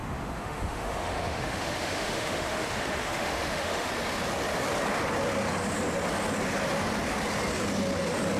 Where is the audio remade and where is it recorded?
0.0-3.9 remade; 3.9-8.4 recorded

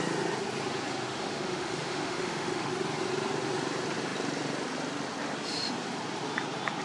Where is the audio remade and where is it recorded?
0.0-1.1 recorded; 1.1-2.7 remade; 2.7-6.8 recorded

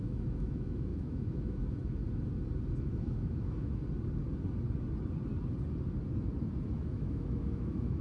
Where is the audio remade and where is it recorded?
0.0-2.0 remade; 2.0-2.8 recorded; 2.8-3.8 remade; 3.8-6.7 recorded; 6.7-8.0 remade

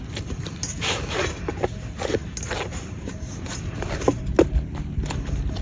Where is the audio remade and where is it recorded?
0.0-5.6 recorded